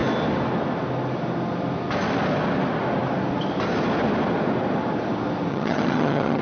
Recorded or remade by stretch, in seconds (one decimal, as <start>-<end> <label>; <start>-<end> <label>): 0.0-5.5 recorded; 5.5-6.4 remade